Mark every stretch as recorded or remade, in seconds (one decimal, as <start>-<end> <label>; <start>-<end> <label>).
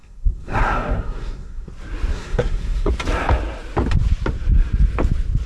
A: 0.0-1.7 remade; 1.7-2.1 recorded; 2.1-2.9 remade; 2.9-5.5 recorded